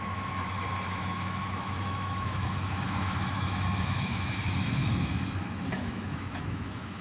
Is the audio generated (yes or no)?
yes